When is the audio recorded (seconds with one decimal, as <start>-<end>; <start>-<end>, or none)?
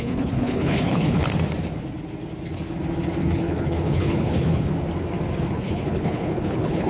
1.2-3.2; 4.7-5.4